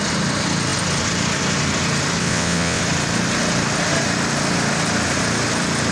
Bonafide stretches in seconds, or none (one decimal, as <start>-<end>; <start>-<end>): 0.0-2.2; 2.8-5.9